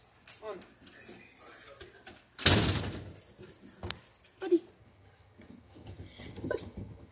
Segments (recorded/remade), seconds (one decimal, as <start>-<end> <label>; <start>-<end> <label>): 0.0-4.8 recorded; 4.8-7.1 remade